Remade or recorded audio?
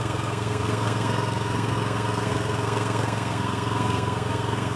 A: remade